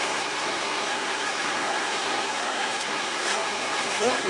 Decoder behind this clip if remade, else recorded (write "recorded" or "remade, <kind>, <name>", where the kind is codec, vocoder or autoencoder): remade, codec, SNAC